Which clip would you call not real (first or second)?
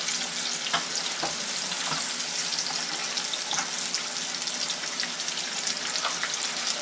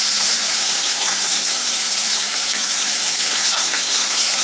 second